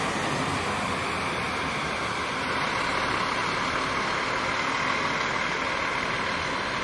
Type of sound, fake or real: real